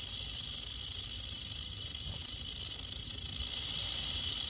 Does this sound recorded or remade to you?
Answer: remade